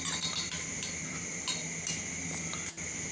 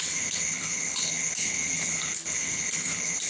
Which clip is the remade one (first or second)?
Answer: second